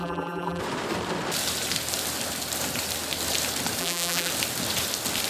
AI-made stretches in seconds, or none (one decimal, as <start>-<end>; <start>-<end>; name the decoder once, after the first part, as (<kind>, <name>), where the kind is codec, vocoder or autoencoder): 0.0-0.6 (vocoder, BigVGAN v2); 3.8-4.3